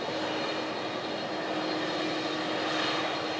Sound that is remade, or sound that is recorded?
recorded